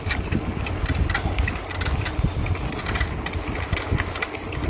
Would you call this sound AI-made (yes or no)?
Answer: no